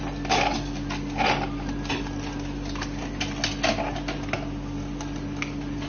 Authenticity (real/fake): real